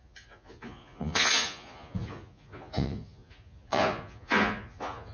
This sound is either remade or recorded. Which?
remade